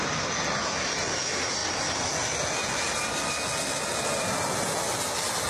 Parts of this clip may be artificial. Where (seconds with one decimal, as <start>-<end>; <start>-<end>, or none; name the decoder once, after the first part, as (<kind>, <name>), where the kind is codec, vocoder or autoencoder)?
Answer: none